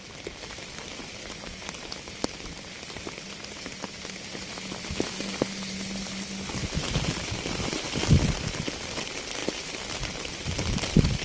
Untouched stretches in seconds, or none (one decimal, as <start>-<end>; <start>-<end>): 0.0-6.6; 8.0-9.4; 10.3-11.2

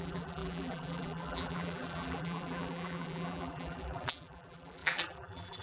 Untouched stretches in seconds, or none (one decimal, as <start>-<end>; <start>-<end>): none